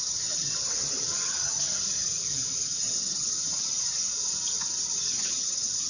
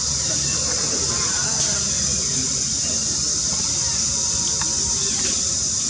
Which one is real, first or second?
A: second